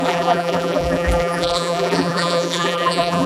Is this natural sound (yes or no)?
no